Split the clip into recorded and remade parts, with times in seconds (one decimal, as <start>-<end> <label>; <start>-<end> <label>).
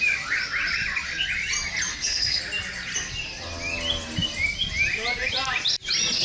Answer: 0.0-1.9 recorded; 1.9-2.4 remade; 2.4-6.2 recorded